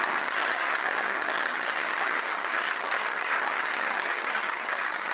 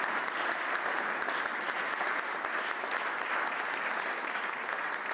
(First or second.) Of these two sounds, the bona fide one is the second